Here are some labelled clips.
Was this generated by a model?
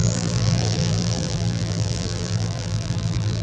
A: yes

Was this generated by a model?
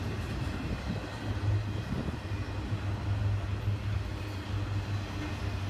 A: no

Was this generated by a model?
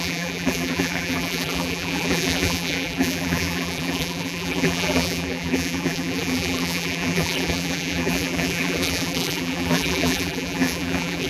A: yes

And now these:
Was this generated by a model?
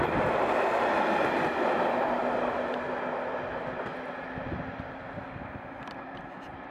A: no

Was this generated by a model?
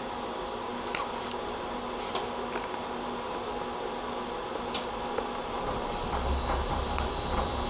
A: no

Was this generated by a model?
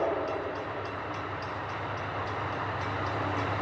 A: yes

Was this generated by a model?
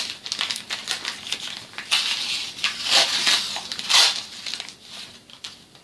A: no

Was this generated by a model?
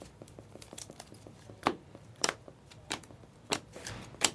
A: yes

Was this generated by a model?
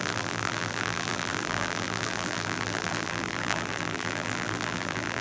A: yes